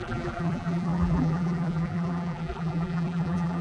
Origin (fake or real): fake